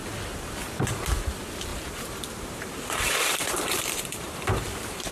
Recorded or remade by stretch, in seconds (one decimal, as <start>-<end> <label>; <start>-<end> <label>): 0.0-1.7 recorded; 1.7-5.1 remade